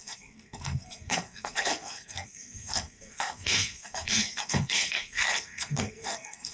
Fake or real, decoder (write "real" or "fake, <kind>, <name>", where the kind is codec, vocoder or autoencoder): fake, codec, SNAC